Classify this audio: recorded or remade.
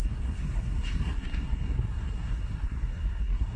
remade